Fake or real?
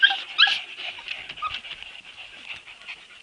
real